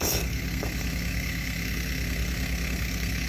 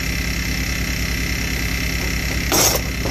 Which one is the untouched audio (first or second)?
second